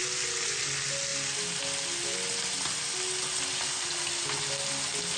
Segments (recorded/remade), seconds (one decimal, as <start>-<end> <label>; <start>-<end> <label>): 0.0-5.2 recorded